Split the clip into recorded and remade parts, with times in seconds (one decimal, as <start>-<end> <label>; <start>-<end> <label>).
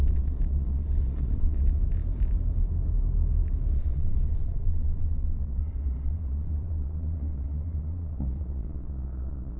0.0-1.8 remade; 1.8-3.7 recorded; 3.7-9.6 remade